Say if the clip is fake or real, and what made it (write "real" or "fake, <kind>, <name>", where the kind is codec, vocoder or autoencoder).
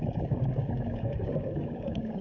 fake, codec, DAC